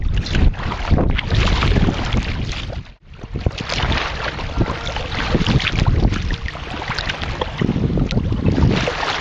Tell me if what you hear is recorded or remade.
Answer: recorded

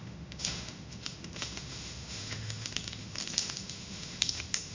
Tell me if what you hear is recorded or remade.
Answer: remade